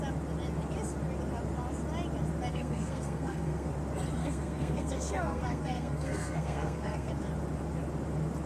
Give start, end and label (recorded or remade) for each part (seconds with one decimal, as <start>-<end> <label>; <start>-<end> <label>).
0.0-2.5 recorded; 2.5-3.7 remade; 3.7-4.2 recorded; 4.2-7.1 remade; 7.1-8.5 recorded